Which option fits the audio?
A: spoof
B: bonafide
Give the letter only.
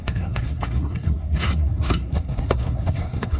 A